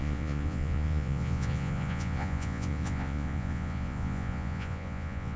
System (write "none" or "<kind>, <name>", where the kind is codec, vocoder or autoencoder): vocoder, Vocos